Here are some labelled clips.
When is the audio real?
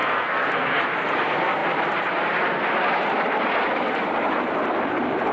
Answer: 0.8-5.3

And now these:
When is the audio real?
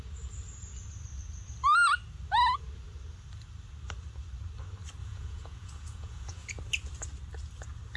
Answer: 0.0-5.0; 6.5-8.0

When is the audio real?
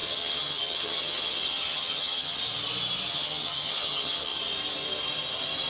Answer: 2.4-3.1; 4.4-5.7